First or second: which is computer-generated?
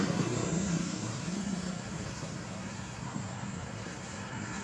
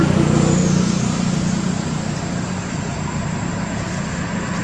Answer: first